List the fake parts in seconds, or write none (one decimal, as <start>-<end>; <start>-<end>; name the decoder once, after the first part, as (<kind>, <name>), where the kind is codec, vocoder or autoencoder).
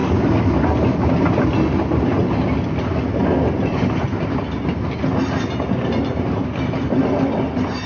none